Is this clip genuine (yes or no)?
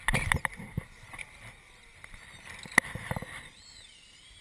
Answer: yes